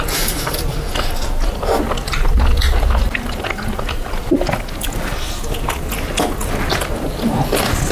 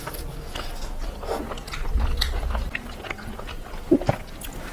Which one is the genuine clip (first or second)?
second